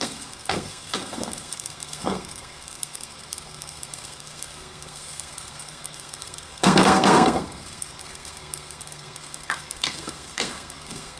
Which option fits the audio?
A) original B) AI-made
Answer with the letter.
B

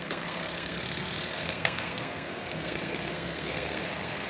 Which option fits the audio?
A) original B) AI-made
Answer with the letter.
B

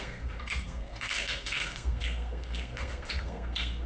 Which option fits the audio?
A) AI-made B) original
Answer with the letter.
A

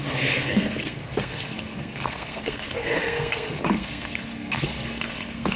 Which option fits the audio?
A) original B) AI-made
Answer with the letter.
B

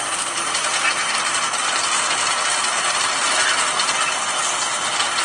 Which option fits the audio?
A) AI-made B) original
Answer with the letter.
B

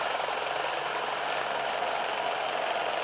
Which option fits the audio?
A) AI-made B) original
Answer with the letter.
B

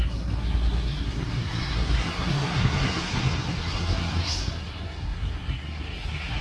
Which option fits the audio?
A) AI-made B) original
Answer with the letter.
A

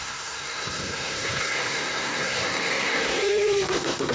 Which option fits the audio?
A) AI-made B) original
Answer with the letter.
A